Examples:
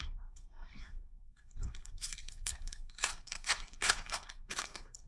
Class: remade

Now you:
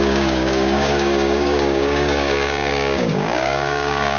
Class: remade